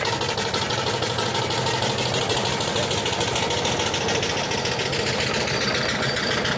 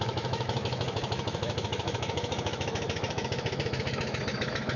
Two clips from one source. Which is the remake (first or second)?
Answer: second